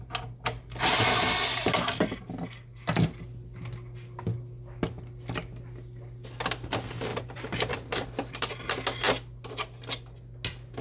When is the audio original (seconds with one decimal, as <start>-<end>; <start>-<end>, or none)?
0.0-7.1; 8.5-10.8